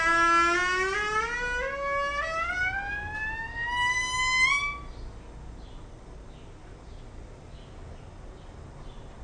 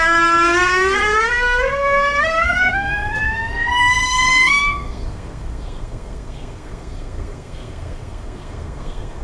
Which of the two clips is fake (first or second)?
second